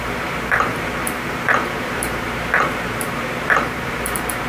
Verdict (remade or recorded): remade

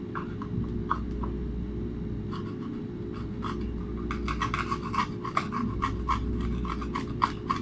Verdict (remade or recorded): recorded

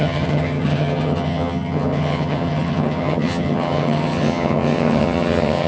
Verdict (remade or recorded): remade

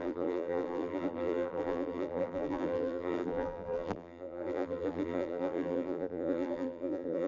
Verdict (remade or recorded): remade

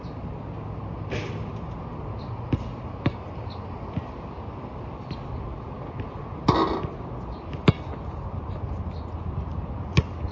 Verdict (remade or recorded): recorded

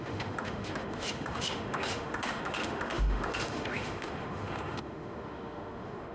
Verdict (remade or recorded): remade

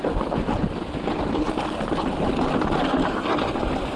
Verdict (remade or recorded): recorded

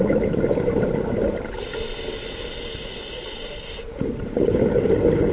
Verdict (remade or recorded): recorded